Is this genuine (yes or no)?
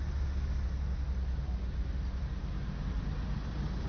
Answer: yes